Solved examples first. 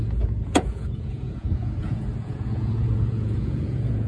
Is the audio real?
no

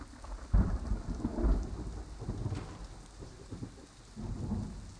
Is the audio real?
yes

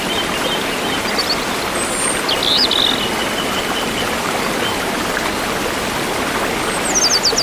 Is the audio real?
yes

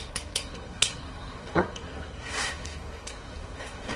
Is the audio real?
no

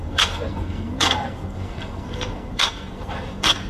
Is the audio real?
no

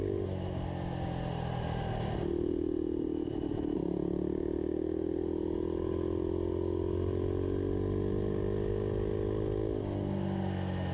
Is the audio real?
yes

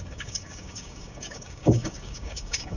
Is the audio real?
no